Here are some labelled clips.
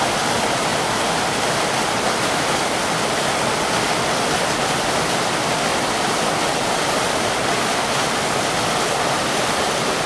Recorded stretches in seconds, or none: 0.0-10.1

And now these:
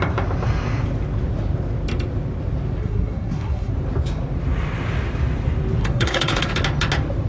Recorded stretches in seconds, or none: 0.0-2.8; 3.7-5.8; 6.5-7.3